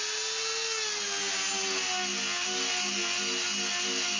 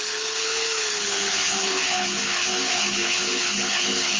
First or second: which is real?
first